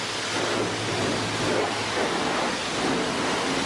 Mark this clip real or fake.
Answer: real